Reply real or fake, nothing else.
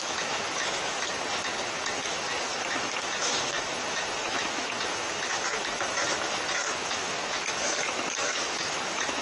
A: fake